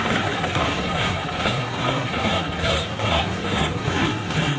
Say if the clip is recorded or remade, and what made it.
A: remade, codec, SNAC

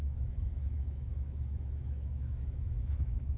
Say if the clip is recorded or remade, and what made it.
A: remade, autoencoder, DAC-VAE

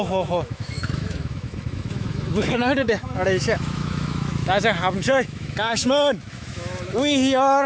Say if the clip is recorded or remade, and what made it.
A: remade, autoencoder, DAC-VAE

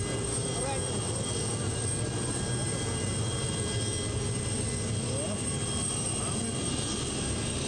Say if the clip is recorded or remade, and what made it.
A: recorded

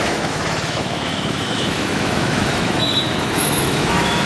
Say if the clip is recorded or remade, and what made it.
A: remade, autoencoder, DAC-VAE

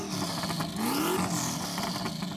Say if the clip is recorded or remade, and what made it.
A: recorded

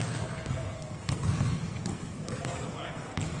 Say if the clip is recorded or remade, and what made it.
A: remade, codec, SNAC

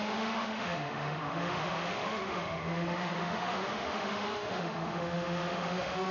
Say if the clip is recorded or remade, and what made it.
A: remade, autoencoder, DAC-VAE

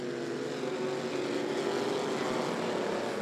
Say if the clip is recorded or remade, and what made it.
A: recorded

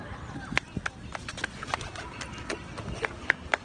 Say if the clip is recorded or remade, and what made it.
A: recorded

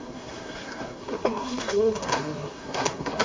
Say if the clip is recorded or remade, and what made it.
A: remade, codec, SNAC